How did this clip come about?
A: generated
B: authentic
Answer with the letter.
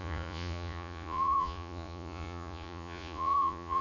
A